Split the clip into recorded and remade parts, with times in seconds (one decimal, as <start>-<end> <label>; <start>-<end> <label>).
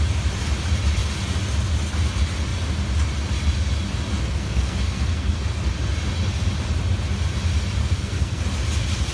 0.0-4.1 recorded; 4.1-5.7 remade; 5.7-7.8 recorded; 7.8-8.4 remade; 8.4-9.1 recorded